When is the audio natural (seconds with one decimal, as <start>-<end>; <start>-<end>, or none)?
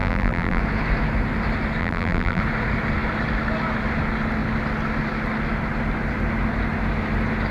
0.6-1.8; 2.4-7.5